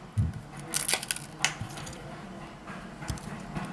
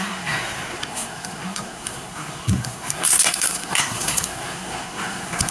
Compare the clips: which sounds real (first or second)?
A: first